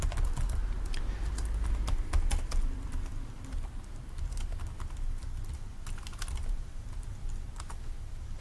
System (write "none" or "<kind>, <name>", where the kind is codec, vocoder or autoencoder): none